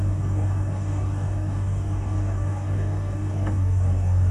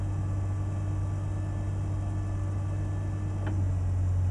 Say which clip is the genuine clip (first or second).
second